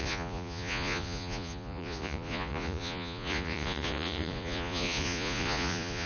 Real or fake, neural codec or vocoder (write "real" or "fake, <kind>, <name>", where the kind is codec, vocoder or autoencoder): fake, vocoder, Vocos